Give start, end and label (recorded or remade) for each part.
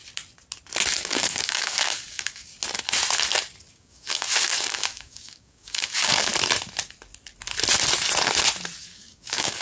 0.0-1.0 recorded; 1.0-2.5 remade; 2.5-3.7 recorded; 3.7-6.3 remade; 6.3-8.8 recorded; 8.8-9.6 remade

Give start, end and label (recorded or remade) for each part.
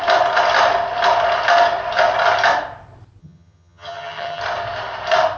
0.0-3.2 recorded; 3.2-4.4 remade; 4.4-5.4 recorded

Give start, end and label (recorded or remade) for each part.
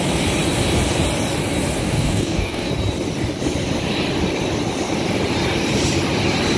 0.0-1.8 recorded; 1.8-2.7 remade; 2.7-6.6 recorded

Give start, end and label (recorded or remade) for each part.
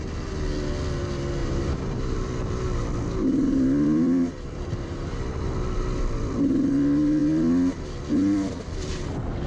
0.0-1.4 recorded; 1.4-2.6 remade; 2.6-3.4 recorded; 3.4-6.7 remade; 6.7-9.5 recorded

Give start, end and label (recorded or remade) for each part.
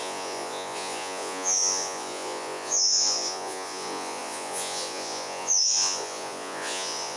0.0-7.2 remade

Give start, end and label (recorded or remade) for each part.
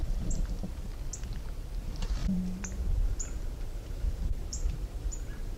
0.0-0.9 remade; 0.9-1.8 recorded; 1.8-5.6 remade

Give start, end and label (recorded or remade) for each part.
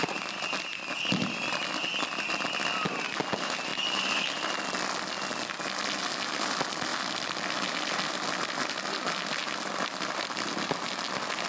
0.0-3.7 recorded; 3.7-4.2 remade; 4.2-6.9 recorded; 6.9-7.9 remade; 7.9-9.4 recorded; 9.4-10.8 remade; 10.8-11.5 recorded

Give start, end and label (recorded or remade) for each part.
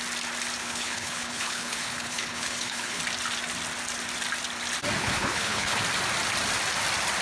0.0-0.6 recorded; 0.6-3.0 remade; 3.0-5.0 recorded; 5.0-5.8 remade; 5.8-7.2 recorded